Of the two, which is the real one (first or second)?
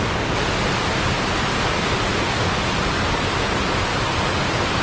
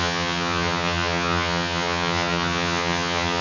first